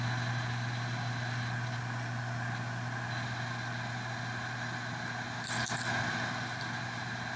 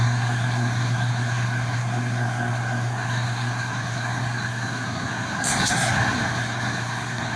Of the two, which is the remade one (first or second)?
second